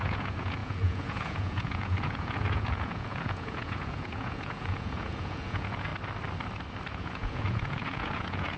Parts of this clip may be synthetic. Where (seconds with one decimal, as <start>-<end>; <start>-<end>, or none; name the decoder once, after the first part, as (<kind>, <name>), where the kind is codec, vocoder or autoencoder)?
0.0-5.9 (vocoder, Vocos); 6.9-8.6